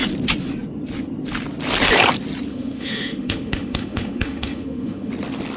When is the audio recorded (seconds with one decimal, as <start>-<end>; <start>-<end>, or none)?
0.0-2.5; 5.1-5.6